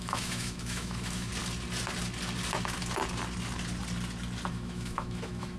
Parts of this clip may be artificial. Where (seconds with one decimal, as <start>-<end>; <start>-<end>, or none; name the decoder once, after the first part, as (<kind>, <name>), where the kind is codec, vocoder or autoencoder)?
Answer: 0.0-1.3 (autoencoder, DAC-VAE); 4.5-5.6

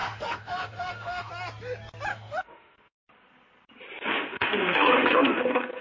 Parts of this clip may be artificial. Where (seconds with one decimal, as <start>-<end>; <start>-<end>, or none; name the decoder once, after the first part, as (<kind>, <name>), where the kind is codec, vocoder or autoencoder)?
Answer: 0.0-1.3 (autoencoder, DAC-VAE); 2.1-3.0; 4.1-5.8

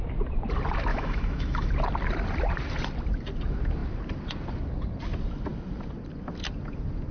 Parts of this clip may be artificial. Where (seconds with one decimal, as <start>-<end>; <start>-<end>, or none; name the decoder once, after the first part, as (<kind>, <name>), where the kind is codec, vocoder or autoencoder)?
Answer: 0.9-1.7 (autoencoder, DAC-VAE)

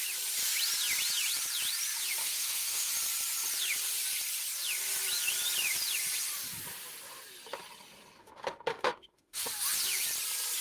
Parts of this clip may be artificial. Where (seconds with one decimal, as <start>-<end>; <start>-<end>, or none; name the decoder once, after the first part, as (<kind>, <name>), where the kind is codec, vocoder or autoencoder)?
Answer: 2.2-2.9 (autoencoder, DAC-VAE); 8.2-9.4

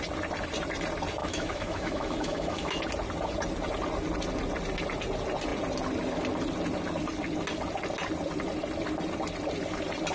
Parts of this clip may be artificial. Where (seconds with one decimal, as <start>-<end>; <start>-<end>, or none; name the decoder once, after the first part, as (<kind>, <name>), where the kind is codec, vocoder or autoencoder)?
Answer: 1.2-2.8 (autoencoder, DAC-VAE)

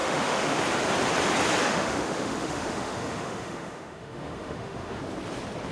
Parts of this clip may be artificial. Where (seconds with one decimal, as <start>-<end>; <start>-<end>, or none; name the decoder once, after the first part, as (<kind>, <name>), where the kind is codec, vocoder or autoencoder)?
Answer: 0.0-0.6 (autoencoder, DAC-VAE); 1.6-5.0

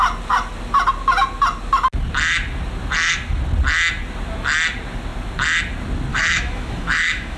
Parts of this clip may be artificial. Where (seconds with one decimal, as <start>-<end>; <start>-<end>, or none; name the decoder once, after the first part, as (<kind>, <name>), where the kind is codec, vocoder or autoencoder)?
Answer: 6.1-7.4 (autoencoder, DAC-VAE)

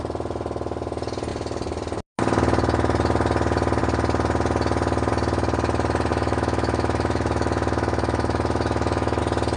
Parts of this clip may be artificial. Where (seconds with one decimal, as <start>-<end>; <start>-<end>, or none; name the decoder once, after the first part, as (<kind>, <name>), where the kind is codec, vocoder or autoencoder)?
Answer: 6.1-9.2 (autoencoder, DAC-VAE)